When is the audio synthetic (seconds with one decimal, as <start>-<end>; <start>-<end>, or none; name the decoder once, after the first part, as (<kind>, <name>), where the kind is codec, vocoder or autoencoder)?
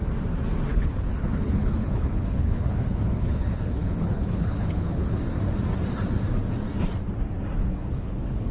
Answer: 0.7-5.2 (codec, HILCodec); 7.6-8.5